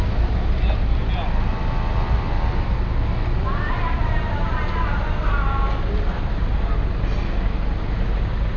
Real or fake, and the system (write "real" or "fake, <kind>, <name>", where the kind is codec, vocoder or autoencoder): real